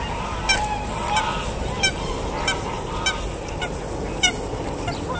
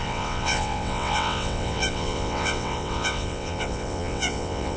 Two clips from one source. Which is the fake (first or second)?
second